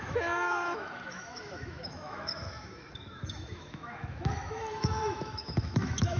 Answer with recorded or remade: remade